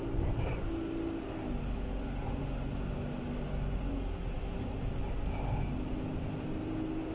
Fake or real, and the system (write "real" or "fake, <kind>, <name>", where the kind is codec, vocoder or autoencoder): real